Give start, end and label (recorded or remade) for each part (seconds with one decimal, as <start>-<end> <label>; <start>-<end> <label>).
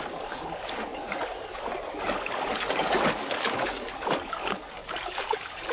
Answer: 0.0-5.7 remade